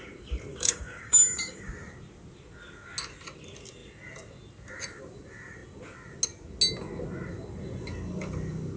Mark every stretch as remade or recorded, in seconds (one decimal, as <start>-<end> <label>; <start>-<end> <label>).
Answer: 0.0-0.5 recorded; 0.5-1.7 remade; 1.7-8.8 recorded